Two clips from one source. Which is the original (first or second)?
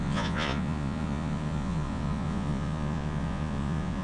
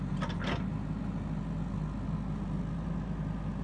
second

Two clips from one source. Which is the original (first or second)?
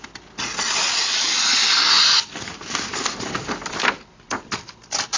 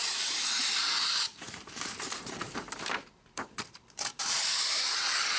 first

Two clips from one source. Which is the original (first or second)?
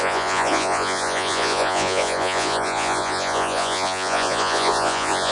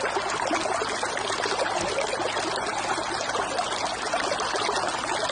second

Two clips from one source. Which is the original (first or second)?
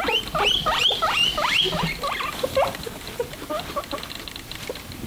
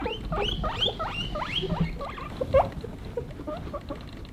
second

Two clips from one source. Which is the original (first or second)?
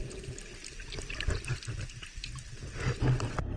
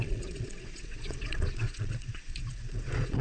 first